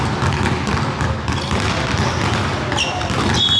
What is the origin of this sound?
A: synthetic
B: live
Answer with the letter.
B